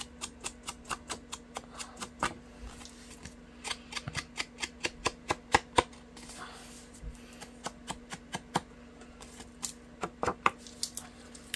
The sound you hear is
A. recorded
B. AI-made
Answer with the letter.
A